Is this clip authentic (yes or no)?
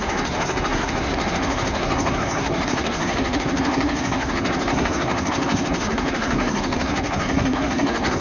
no